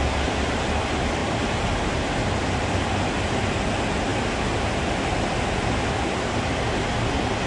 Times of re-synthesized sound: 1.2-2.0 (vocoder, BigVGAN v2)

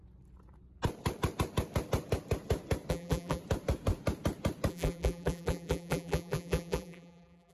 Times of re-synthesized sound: 2.9-3.4 (vocoder, BigVGAN v2); 4.7-7.5

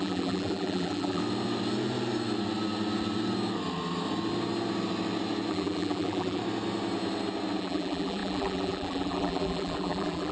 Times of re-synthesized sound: 0.0-1.2 (vocoder, BigVGAN v2); 5.5-6.4; 7.6-10.3

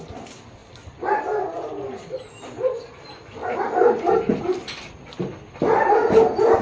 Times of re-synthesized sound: 0.6-2.3 (vocoder, BigVGAN v2); 3.4-5.9

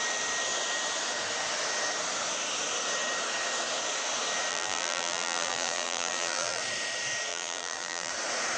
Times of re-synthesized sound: 4.5-6.6 (vocoder, BigVGAN v2); 7.3-8.1